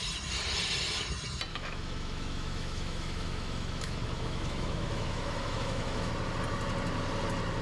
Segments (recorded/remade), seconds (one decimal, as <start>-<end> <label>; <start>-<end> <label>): 0.0-1.5 recorded; 1.5-6.1 remade; 6.1-7.6 recorded

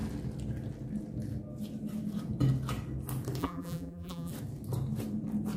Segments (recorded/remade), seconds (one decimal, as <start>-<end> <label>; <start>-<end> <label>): 0.0-3.4 recorded; 3.4-4.3 remade; 4.3-5.6 recorded

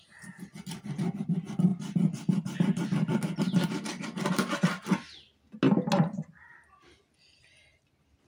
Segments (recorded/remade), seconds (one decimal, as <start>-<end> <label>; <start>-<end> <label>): 0.0-8.3 recorded

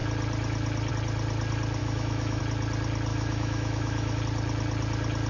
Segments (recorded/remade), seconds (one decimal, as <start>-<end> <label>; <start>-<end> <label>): 0.0-1.8 recorded; 1.8-2.4 remade; 2.4-3.1 recorded; 3.1-4.2 remade; 4.2-5.3 recorded

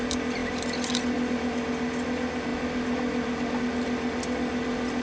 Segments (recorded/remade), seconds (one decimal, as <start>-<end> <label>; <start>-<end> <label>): 0.0-5.0 recorded

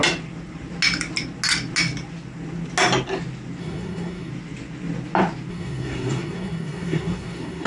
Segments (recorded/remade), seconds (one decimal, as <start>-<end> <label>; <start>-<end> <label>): 0.0-3.6 recorded; 3.6-4.3 remade; 4.3-5.5 recorded; 5.5-7.7 remade

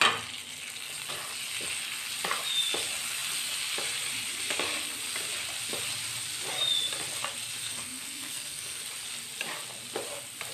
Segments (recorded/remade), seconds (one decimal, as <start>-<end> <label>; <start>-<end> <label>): 0.0-7.6 recorded; 7.6-8.8 remade; 8.8-10.5 recorded

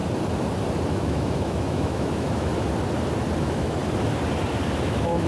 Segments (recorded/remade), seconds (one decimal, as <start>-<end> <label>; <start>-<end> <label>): 0.0-0.9 recorded; 0.9-2.5 remade; 2.5-3.4 recorded; 3.4-3.8 remade; 3.8-4.8 recorded; 4.8-5.3 remade